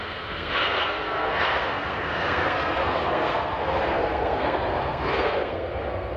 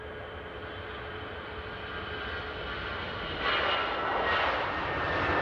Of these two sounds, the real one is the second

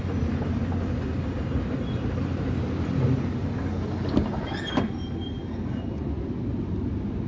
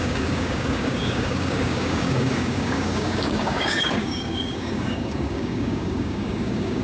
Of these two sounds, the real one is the first